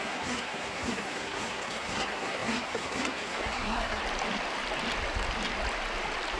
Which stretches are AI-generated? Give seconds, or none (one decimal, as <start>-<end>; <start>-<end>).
0.0-4.0